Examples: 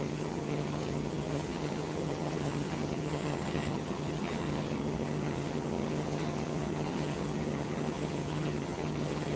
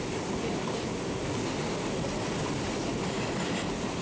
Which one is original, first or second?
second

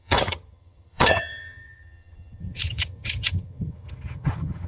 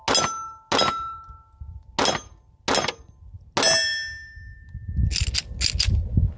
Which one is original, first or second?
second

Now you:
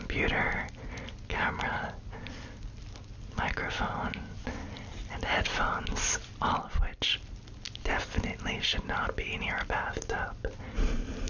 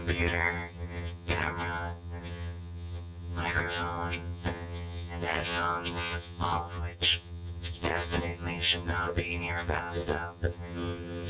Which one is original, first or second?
first